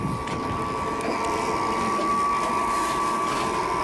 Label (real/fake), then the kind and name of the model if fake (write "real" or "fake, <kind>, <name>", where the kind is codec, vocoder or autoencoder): real